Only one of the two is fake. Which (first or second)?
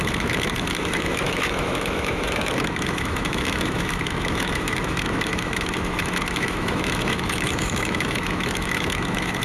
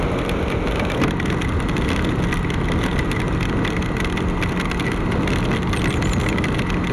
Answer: first